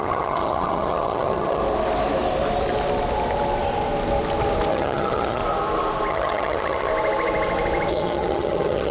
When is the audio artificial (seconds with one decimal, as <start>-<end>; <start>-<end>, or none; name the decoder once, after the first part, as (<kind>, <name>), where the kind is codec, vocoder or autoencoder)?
0.0-1.6 (vocoder, HiFi-GAN); 4.7-5.4; 6.1-6.9; 7.9-8.9